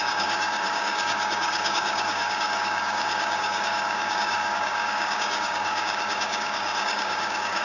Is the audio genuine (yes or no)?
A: no